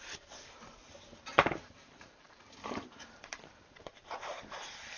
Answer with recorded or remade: remade